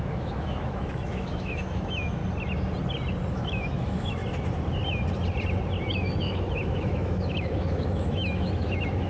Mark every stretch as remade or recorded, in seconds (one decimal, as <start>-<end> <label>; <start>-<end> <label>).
0.0-2.2 remade; 2.2-3.3 recorded; 3.3-4.2 remade; 4.2-5.8 recorded; 5.8-9.1 remade

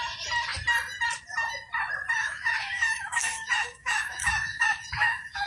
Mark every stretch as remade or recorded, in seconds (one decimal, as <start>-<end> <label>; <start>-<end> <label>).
0.0-2.2 recorded; 2.2-5.5 remade

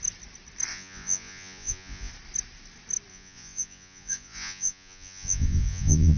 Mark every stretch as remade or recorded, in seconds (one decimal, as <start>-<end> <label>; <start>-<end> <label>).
0.0-0.7 recorded; 0.7-2.1 remade; 2.1-3.1 recorded; 3.1-6.2 remade

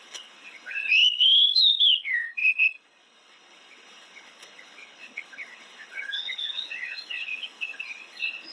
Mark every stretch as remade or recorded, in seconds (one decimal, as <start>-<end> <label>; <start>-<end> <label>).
0.0-8.5 remade

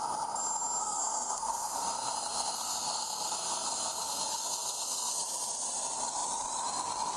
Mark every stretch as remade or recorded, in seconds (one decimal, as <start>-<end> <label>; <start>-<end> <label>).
0.0-0.8 recorded; 0.8-5.1 remade; 5.1-7.2 recorded

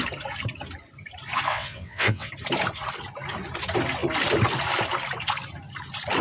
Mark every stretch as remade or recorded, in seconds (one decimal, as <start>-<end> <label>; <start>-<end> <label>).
0.0-1.5 recorded; 1.5-2.3 remade; 2.3-6.2 recorded

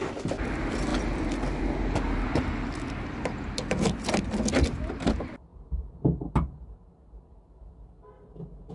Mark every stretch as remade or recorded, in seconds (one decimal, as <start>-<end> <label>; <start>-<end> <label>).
0.0-8.7 recorded

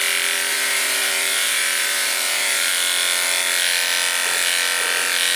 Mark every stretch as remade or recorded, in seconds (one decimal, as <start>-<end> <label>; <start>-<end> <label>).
0.0-0.5 recorded; 0.5-2.7 remade; 2.7-5.4 recorded